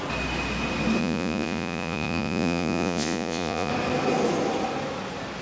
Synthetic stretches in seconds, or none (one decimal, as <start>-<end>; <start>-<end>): 1.0-3.7

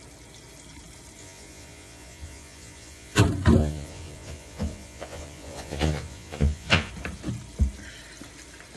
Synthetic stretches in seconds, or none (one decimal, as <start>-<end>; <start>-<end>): 1.2-3.2; 3.6-6.9

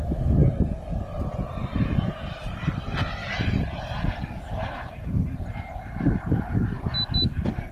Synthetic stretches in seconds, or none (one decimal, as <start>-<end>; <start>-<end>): 3.2-6.6

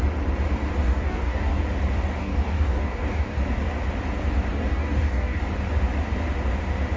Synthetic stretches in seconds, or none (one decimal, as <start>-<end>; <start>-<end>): 0.8-1.6; 2.2-3.4; 4.5-5.4

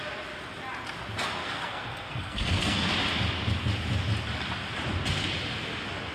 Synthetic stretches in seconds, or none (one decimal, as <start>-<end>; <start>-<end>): 1.4-2.9

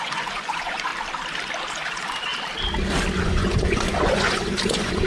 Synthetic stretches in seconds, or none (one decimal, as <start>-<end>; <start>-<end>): 0.0-0.9; 1.7-2.3; 3.2-5.1

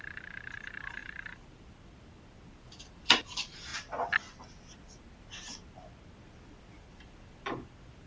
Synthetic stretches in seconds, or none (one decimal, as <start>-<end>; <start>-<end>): 0.0-3.7; 6.6-8.1

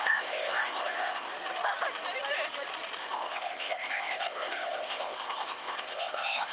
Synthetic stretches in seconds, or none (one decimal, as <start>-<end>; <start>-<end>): 0.0-1.3; 3.0-6.5